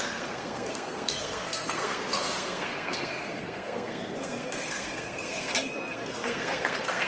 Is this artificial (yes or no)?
yes